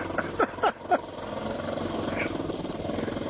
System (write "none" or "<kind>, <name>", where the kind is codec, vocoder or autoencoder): none